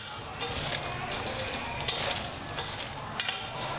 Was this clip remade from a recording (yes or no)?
no